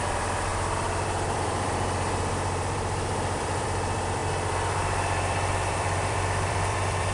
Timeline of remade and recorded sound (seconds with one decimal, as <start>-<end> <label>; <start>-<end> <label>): 0.0-7.1 remade